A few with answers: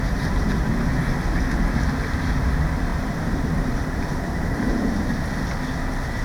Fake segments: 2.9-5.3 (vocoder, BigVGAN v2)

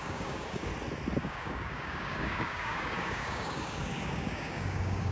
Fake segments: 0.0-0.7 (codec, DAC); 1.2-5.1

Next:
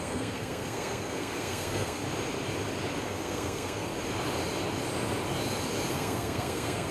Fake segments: 0.0-2.0 (codec, SNAC); 3.0-3.9; 5.9-6.9

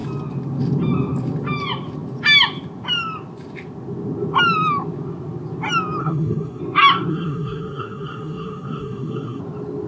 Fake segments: 6.0-6.6 (codec, SNAC); 7.1-9.4

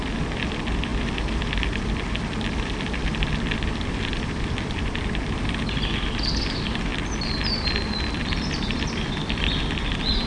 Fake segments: 0.0-6.9 (vocoder, BigVGAN v2); 7.6-10.3